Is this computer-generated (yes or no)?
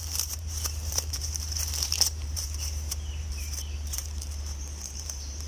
yes